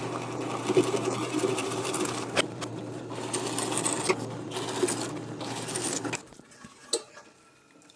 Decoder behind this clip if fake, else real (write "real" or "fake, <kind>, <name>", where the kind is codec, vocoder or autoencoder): real